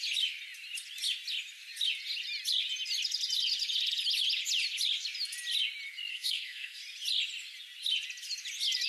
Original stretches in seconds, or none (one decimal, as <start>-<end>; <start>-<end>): 0.0-6.1; 6.8-8.9